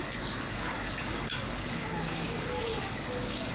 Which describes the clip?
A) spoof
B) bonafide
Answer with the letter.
A